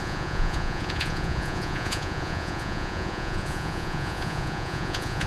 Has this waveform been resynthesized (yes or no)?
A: yes